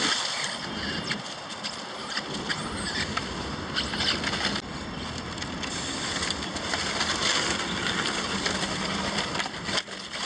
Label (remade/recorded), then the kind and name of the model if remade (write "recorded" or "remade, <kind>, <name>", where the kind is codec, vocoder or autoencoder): recorded